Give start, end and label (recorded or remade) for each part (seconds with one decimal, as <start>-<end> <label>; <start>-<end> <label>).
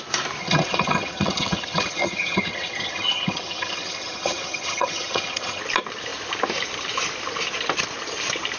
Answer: 0.0-0.4 recorded; 0.4-5.6 remade; 5.6-8.6 recorded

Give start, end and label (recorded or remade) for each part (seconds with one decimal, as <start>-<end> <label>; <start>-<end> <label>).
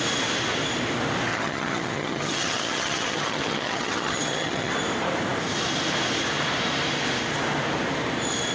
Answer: 0.0-1.3 recorded; 1.3-4.7 remade; 4.7-8.5 recorded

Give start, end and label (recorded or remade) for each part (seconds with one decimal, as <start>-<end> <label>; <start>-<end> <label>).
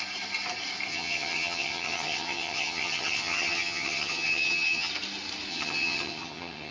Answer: 0.0-0.9 recorded; 0.9-4.9 remade; 4.9-5.5 recorded; 5.5-6.7 remade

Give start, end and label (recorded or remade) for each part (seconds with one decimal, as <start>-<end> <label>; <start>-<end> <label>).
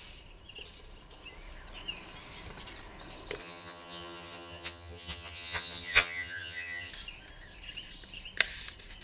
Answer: 0.0-3.4 recorded; 3.4-6.9 remade; 6.9-9.0 recorded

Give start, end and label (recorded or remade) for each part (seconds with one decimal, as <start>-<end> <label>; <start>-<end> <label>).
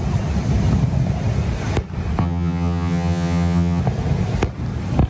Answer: 0.0-2.2 recorded; 2.2-3.8 remade; 3.8-5.1 recorded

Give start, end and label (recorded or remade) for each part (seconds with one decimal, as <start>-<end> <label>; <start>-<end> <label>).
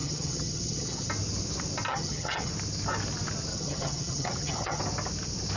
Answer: 0.0-1.1 remade; 1.1-1.9 recorded; 1.9-2.5 remade; 2.5-3.5 recorded; 3.5-4.8 remade; 4.8-5.6 recorded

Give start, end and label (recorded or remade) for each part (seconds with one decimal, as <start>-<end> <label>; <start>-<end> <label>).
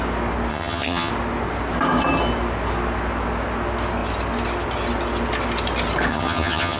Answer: 0.0-0.5 recorded; 0.5-1.1 remade; 1.1-6.1 recorded; 6.1-6.8 remade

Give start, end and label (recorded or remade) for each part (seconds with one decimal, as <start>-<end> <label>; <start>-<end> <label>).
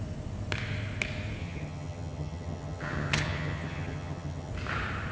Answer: 0.0-1.4 recorded; 1.4-4.5 remade; 4.5-5.1 recorded